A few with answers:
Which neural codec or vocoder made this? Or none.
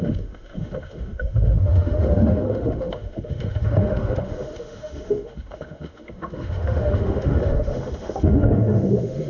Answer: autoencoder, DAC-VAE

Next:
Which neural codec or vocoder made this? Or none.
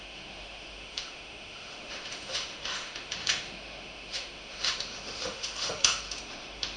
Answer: autoencoder, DAC-VAE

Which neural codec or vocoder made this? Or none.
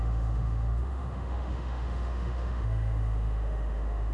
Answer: autoencoder, DAC-VAE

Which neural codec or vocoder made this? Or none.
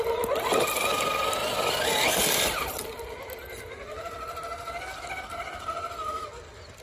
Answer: none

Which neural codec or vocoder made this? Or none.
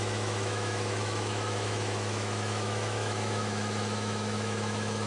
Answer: autoencoder, DAC-VAE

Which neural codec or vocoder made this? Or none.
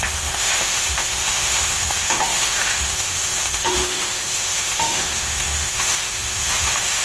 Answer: autoencoder, DAC-VAE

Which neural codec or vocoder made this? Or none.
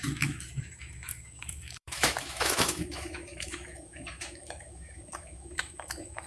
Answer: autoencoder, DAC-VAE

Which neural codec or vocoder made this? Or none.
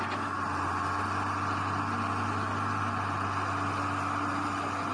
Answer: none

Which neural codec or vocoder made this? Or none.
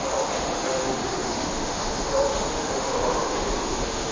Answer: autoencoder, DAC-VAE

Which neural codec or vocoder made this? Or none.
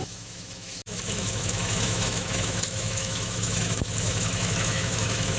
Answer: autoencoder, DAC-VAE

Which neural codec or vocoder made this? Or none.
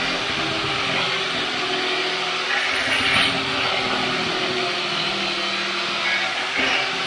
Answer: none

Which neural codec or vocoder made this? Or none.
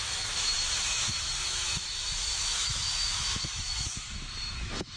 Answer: autoencoder, DAC-VAE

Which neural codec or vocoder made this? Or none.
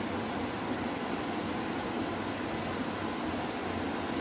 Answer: none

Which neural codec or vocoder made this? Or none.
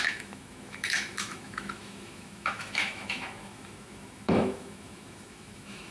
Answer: autoencoder, DAC-VAE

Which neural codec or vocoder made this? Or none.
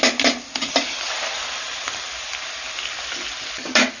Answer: none